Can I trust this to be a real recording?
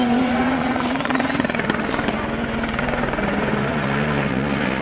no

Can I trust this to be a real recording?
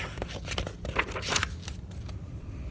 no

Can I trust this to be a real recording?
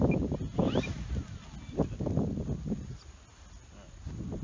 yes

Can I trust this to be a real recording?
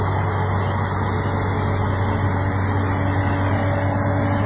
yes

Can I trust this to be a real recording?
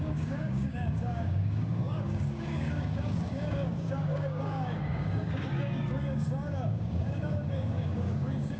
no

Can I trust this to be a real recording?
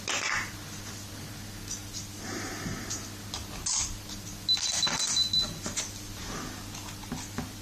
yes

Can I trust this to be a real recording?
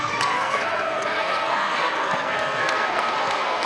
no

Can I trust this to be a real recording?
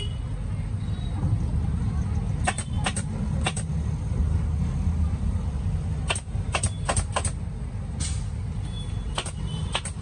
yes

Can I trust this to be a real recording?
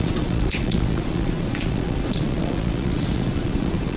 no